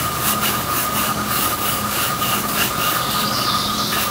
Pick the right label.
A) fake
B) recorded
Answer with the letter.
A